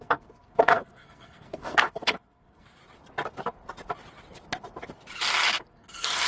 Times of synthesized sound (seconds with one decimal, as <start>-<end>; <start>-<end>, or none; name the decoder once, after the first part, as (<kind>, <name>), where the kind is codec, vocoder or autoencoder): 0.0-2.8 (codec, SNAC); 5.7-6.3